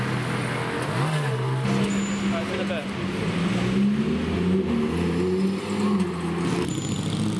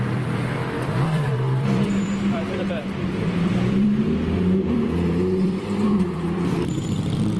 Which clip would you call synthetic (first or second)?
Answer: second